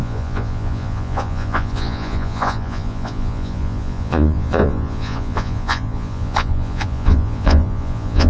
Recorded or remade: remade